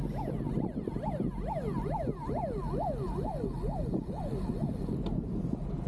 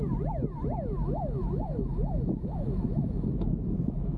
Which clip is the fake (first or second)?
second